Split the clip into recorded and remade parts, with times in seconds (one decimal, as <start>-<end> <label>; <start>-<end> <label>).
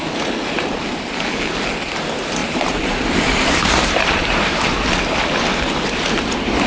0.0-2.4 recorded; 2.4-4.6 remade; 4.6-6.7 recorded